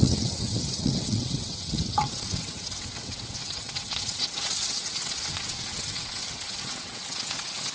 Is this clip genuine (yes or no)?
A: no